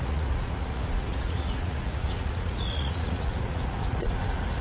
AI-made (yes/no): yes